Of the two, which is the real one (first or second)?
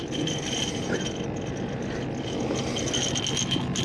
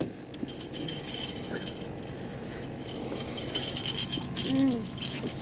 first